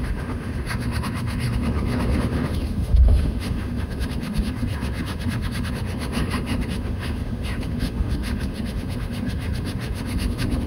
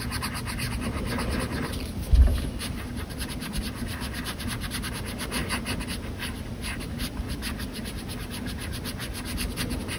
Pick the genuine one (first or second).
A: second